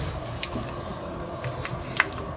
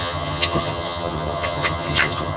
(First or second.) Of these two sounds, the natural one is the first